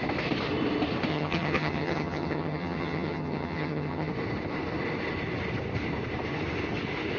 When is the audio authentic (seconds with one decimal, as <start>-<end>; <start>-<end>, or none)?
0.0-1.1; 4.1-7.2